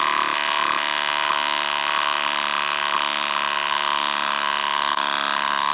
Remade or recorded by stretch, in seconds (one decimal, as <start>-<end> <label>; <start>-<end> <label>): 0.0-5.7 recorded